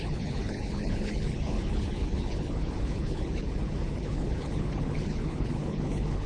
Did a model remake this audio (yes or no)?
yes